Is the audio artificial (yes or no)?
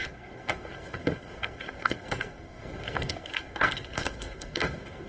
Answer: yes